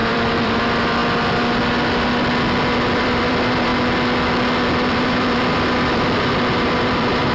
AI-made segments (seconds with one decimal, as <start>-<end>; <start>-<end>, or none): 0.0-1.0; 3.0-3.7; 4.9-7.3